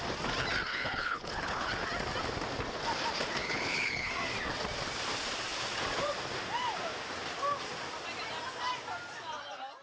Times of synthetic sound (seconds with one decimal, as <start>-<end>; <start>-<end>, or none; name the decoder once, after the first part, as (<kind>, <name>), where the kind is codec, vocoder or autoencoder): 0.7-1.7 (codec, HILCodec); 3.4-4.1